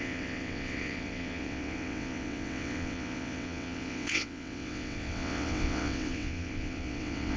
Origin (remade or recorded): remade